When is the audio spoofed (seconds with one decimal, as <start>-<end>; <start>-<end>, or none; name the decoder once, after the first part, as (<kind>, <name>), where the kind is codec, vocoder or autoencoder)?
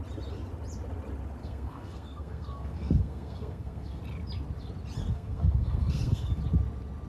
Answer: 1.4-4.0 (codec, SNAC); 5.0-6.4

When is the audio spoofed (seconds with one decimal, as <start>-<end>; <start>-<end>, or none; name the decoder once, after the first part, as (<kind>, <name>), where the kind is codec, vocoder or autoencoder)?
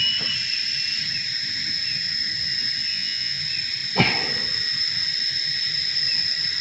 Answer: 2.9-3.4 (vocoder, Vocos)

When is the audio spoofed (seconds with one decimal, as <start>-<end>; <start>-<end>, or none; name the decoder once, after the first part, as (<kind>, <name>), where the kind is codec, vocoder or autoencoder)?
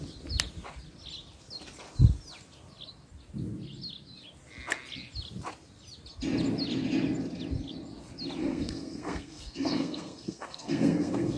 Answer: 8.4-11.4 (codec, SNAC)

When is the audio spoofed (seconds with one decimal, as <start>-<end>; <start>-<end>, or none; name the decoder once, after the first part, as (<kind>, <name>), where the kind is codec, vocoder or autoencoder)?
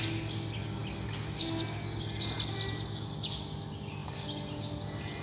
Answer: none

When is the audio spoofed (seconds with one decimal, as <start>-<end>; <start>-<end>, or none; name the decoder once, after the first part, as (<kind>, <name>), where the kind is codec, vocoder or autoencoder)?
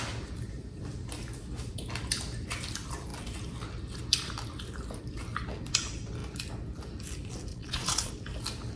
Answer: 7.5-8.1 (vocoder, Vocos)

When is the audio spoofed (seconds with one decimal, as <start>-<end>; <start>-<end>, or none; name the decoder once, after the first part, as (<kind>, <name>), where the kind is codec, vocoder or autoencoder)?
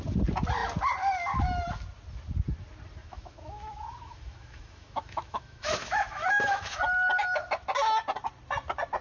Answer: 3.0-6.8 (autoencoder, DAC-VAE)